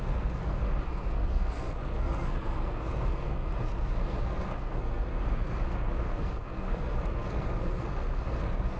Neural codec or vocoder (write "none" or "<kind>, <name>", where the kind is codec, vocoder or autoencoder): codec, SNAC